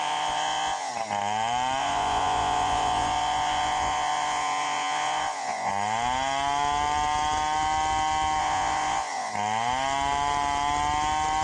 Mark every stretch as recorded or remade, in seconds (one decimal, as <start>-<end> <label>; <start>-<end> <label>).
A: 0.0-0.9 remade; 0.9-1.8 recorded; 1.8-5.7 remade; 5.7-8.4 recorded; 8.4-9.3 remade; 9.3-11.4 recorded

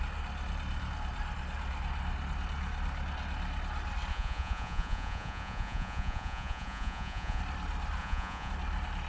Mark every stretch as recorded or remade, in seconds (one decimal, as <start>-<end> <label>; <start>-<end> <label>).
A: 0.0-4.1 recorded; 4.1-7.4 remade; 7.4-8.0 recorded; 8.0-8.5 remade; 8.5-9.1 recorded

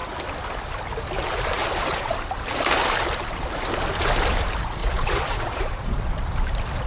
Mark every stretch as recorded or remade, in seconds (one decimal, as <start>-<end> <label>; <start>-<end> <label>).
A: 0.0-1.6 recorded; 1.6-2.1 remade; 2.1-4.8 recorded; 4.8-6.0 remade; 6.0-6.9 recorded

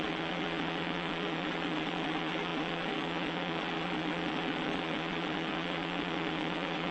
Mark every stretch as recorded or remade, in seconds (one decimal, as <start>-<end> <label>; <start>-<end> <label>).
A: 0.0-6.9 remade

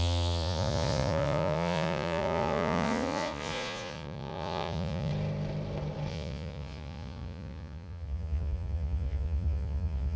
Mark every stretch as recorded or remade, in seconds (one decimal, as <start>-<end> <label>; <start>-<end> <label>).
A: 0.0-5.1 remade; 5.1-6.1 recorded; 6.1-10.2 remade